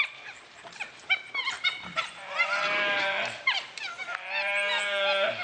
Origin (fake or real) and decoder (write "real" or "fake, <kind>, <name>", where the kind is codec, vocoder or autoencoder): fake, vocoder, BigVGAN v2